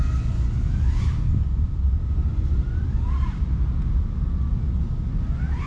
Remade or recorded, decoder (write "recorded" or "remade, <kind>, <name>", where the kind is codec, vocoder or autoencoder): recorded